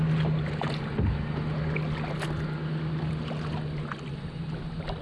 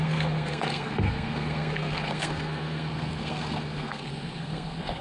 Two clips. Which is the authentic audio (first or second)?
first